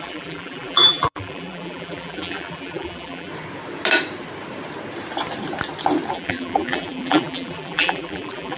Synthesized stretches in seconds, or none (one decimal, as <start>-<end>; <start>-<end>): 0.0-3.3; 6.1-8.6